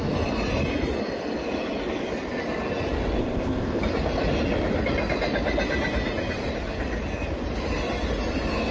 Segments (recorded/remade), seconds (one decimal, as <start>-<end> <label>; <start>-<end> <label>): 0.0-3.2 recorded; 3.2-3.8 remade; 3.8-8.7 recorded